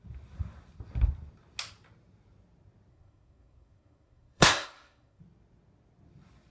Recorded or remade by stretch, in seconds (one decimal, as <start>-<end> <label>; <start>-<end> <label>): 0.0-2.9 recorded; 2.9-5.2 remade; 5.2-6.5 recorded